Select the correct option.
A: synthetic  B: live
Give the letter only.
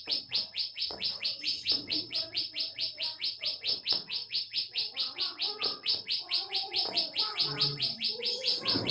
A